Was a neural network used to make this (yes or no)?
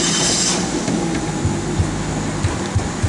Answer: no